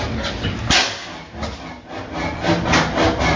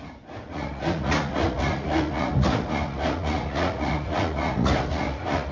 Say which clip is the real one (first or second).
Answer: first